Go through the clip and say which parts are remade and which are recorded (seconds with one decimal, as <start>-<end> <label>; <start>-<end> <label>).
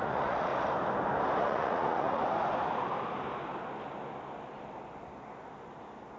0.0-0.5 remade; 0.5-1.4 recorded; 1.4-2.2 remade; 2.2-6.2 recorded